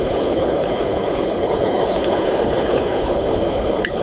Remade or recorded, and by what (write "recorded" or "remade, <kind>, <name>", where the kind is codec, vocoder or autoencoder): remade, codec, HILCodec